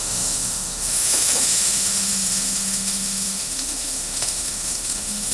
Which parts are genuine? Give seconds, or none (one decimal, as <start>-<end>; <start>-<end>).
none